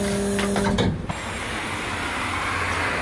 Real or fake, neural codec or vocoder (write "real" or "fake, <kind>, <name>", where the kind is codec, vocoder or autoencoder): real